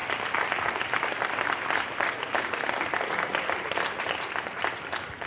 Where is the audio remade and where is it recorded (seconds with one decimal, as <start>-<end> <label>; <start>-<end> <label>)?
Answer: 0.0-5.3 recorded